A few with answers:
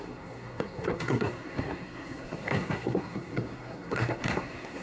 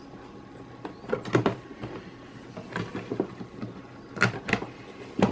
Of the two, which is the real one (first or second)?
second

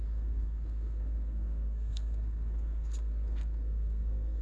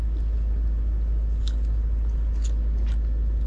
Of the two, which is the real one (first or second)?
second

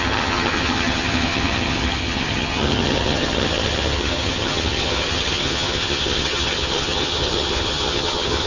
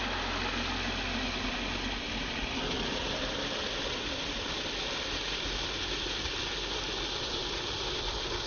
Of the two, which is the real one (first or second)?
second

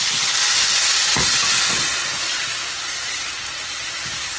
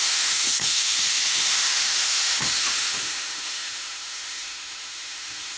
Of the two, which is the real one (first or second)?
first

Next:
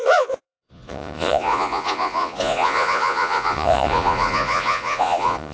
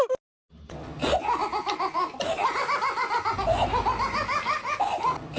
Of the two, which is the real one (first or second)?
second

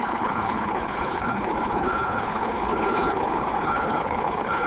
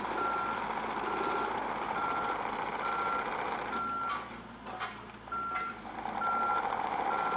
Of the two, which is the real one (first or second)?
second